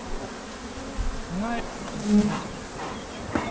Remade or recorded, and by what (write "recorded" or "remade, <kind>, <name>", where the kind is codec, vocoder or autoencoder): recorded